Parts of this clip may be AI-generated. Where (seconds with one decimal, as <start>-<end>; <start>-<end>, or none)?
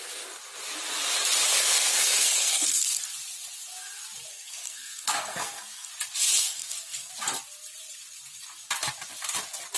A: 1.5-3.0; 4.3-5.9; 6.4-7.1